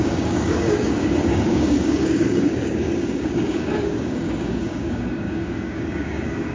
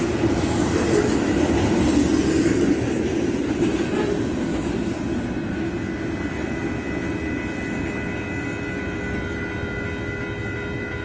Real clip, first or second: second